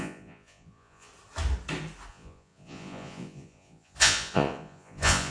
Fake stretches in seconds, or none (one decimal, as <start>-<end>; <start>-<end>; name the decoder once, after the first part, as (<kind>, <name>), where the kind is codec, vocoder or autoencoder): 0.0-1.1 (vocoder, Vocos); 2.1-5.3